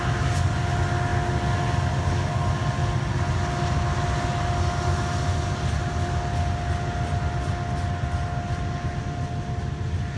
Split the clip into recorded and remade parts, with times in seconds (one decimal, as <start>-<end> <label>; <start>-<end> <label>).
0.0-10.2 recorded